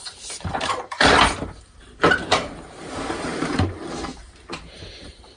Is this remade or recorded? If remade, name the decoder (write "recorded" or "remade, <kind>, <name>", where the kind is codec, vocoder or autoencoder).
remade, vocoder, BigVGAN v2